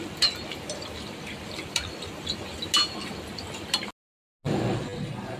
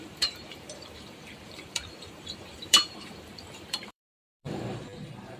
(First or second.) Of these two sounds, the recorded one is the first